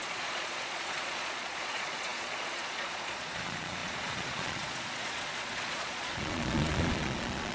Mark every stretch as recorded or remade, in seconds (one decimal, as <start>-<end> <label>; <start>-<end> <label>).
0.0-7.5 remade